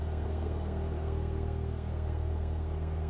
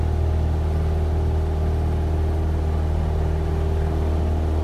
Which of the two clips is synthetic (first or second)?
first